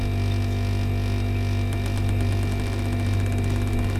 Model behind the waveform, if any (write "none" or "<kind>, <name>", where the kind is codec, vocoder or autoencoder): none